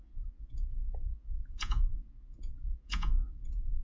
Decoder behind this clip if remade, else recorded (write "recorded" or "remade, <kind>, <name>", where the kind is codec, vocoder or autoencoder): remade, vocoder, Vocos